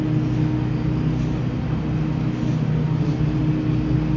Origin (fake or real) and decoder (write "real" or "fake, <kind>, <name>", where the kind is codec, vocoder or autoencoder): real